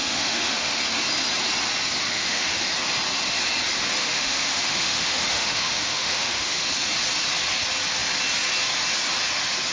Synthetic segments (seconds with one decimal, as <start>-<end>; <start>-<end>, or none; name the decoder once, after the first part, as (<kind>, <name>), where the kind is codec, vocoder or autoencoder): 0.0-0.8 (autoencoder, DAC-VAE); 2.0-2.7; 4.0-6.7